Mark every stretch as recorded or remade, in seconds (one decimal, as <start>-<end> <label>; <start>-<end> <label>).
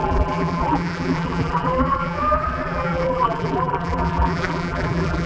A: 0.0-5.3 remade